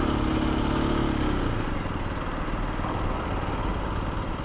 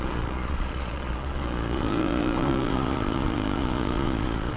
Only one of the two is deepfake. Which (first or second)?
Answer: second